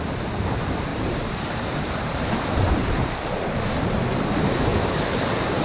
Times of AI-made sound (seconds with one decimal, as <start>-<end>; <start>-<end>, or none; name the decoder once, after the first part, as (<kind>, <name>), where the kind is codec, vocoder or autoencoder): 0.9-4.3 (vocoder, BigVGAN v2); 4.7-5.6